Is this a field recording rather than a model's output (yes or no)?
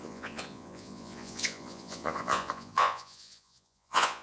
no